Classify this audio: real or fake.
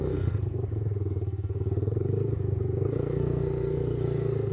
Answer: fake